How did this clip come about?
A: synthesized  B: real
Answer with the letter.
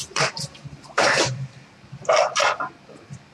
A